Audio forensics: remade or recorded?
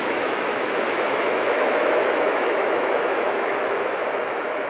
remade